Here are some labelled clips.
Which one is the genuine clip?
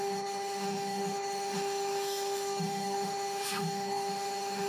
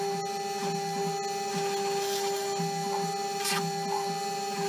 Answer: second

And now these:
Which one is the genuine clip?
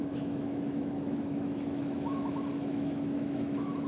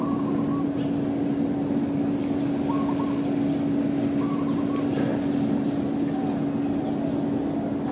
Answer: second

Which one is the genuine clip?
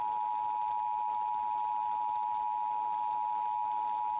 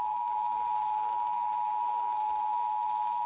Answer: first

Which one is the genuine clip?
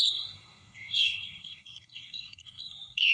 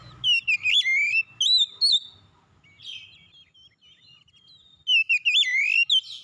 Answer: second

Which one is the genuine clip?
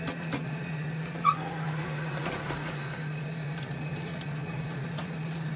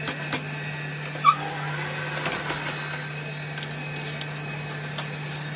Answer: second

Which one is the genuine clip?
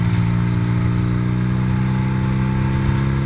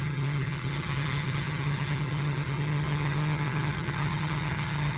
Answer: first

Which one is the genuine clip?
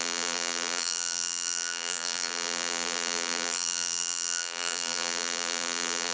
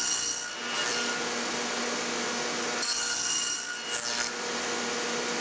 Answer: second